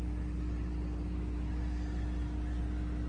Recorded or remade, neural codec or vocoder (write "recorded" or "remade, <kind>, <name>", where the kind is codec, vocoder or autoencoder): recorded